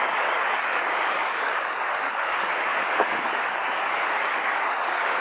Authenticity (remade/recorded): remade